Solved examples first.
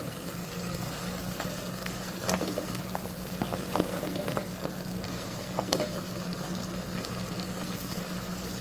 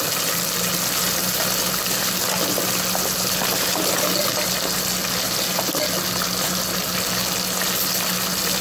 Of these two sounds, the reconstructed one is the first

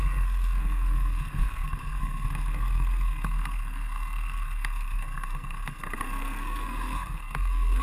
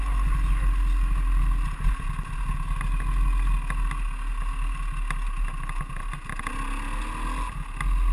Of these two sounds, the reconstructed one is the first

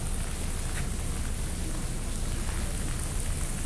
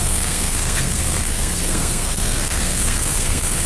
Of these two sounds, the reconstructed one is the second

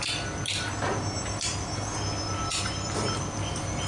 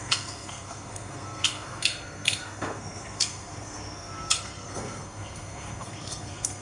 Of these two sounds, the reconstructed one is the second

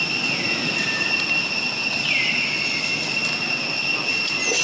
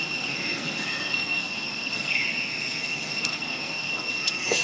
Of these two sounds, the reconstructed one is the second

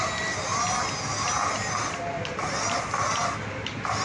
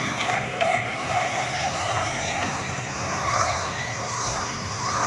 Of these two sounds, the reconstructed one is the second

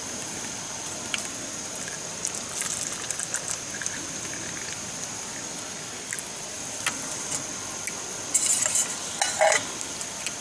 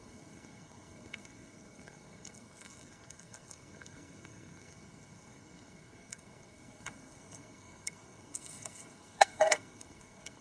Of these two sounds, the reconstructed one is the second